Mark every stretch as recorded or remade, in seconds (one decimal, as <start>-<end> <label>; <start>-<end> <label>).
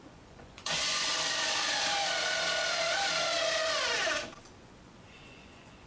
0.0-1.1 remade; 1.1-4.6 recorded; 4.6-5.9 remade